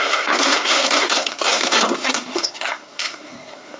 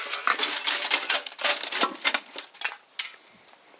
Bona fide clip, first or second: second